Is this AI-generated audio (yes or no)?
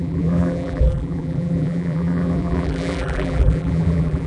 yes